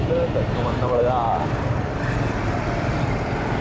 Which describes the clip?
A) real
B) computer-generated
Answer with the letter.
B